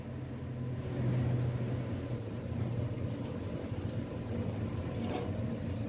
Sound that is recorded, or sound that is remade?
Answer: recorded